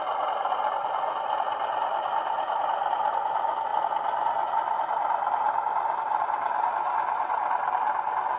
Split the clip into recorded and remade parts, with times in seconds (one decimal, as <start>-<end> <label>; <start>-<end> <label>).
0.0-8.4 recorded